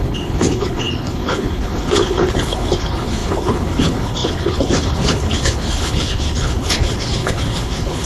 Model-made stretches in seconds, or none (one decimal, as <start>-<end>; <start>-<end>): 0.0-8.1